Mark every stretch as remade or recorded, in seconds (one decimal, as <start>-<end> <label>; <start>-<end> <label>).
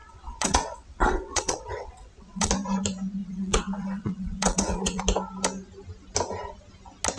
0.0-2.5 remade; 2.5-3.2 recorded; 3.2-5.0 remade; 5.0-7.2 recorded